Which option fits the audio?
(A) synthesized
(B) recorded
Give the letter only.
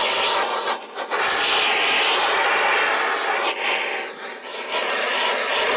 B